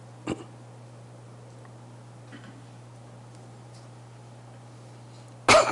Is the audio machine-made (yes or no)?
no